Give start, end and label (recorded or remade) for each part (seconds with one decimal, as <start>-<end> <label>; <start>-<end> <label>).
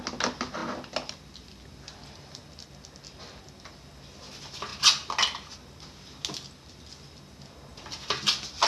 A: 0.0-8.7 recorded